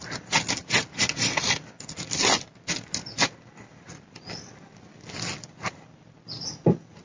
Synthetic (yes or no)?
no